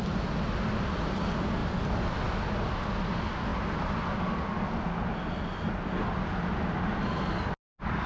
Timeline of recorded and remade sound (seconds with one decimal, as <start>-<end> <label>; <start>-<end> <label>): 0.0-8.1 recorded